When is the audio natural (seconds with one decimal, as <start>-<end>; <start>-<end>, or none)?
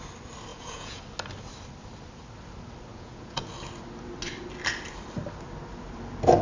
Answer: 0.0-0.5; 1.0-2.9; 3.5-6.4